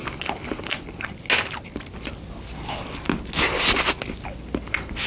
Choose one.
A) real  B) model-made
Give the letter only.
A